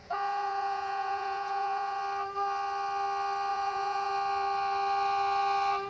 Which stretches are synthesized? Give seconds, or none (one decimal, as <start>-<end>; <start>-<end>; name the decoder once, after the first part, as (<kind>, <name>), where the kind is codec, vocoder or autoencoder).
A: 0.0-2.0 (vocoder, Vocos); 3.5-4.1